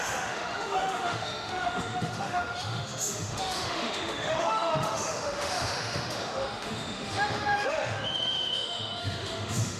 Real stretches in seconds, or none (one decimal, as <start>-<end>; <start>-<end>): none